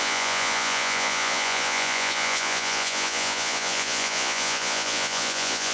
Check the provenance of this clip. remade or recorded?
remade